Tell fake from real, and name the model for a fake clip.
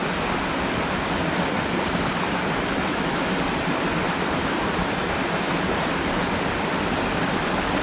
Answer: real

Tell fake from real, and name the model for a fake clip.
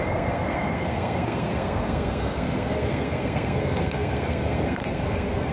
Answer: fake, codec, SNAC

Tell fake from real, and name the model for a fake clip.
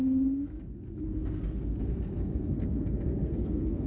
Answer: fake, codec, SNAC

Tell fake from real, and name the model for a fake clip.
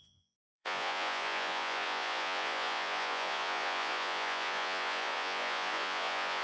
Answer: fake, vocoder, Vocos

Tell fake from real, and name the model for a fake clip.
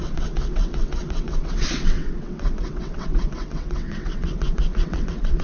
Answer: fake, vocoder, WaveNeXt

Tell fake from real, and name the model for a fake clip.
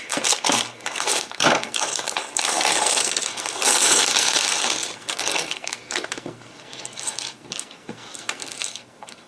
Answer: fake, codec, SNAC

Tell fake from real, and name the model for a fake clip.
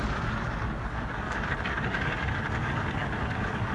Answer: fake, codec, DAC